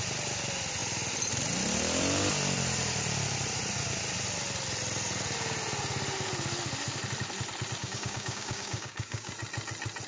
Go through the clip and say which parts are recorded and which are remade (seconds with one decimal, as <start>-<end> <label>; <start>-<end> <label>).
0.0-7.8 recorded; 7.8-9.3 remade; 9.3-10.1 recorded